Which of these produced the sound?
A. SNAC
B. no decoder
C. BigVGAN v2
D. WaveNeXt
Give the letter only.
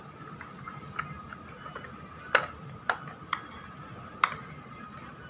B